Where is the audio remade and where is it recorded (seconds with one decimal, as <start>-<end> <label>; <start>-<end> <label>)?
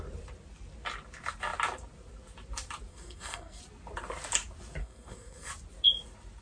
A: 0.0-2.9 recorded; 2.9-3.6 remade; 3.6-4.8 recorded; 4.8-5.5 remade; 5.5-6.4 recorded